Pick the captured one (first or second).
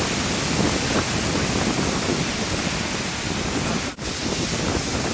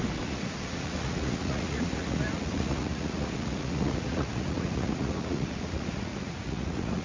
first